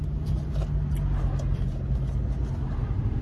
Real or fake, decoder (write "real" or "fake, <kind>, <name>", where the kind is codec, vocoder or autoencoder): real